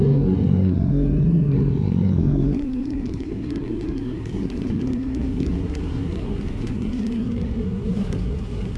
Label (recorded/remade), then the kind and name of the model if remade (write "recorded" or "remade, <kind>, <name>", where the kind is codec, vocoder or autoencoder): remade, codec, SNAC